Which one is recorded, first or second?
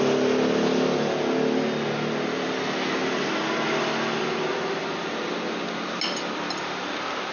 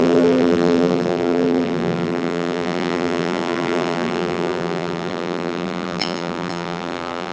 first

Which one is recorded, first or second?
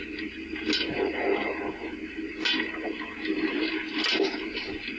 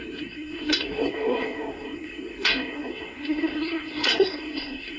first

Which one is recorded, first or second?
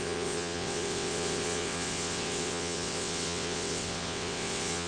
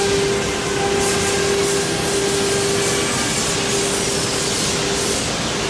second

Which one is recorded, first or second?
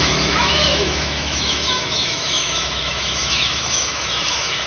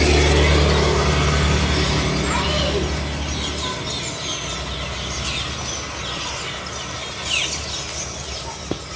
second